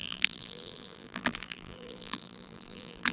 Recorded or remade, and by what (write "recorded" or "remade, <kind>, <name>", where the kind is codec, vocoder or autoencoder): remade, vocoder, BigVGAN v2